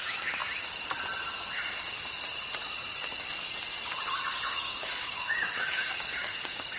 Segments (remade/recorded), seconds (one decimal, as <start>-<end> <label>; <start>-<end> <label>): 0.0-0.4 remade; 0.4-4.5 recorded; 4.5-6.8 remade